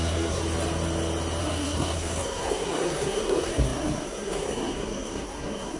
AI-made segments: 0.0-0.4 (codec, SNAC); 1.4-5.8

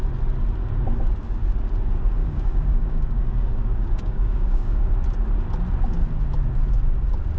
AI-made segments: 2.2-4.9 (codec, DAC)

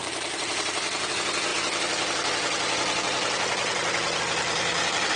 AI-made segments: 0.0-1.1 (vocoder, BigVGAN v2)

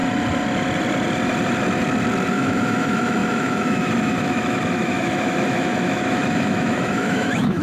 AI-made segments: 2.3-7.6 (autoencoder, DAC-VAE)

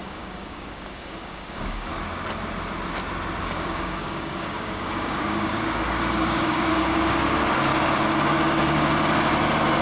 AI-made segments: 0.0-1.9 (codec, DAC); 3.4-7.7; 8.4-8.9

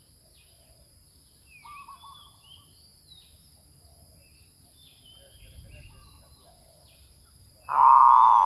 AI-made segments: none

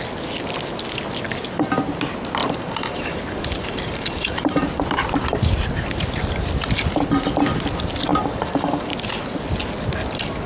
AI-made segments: 2.4-4.8 (vocoder, BigVGAN v2); 8.1-8.9

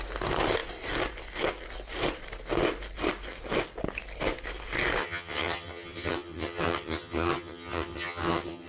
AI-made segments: 5.0-8.7 (vocoder, HiFi-GAN)